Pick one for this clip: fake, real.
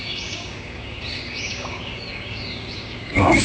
fake